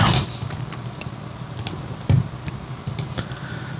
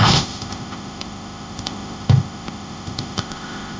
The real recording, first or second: first